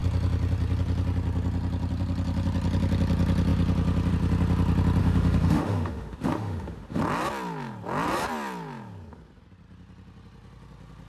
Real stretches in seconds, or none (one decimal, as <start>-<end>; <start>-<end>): 0.0-5.0; 7.0-11.1